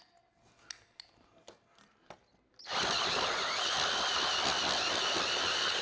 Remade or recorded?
recorded